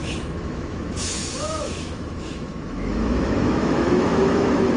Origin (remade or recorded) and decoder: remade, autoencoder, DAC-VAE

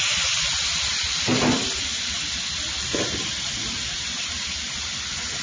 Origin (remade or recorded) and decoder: recorded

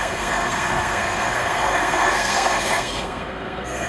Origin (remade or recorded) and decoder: remade, codec, SNAC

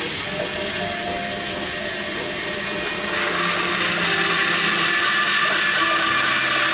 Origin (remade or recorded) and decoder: recorded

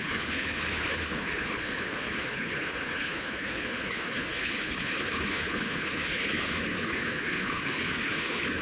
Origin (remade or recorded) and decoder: remade, codec, HILCodec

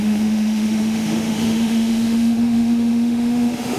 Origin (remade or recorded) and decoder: remade, autoencoder, DAC-VAE